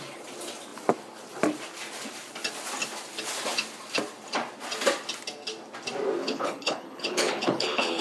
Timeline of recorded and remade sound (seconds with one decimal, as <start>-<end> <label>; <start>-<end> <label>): 0.0-6.2 recorded; 6.2-8.0 remade